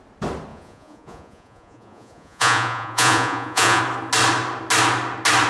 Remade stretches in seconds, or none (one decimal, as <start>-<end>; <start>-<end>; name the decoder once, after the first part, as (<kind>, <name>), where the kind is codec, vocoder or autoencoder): 0.5-3.8 (vocoder, Vocos)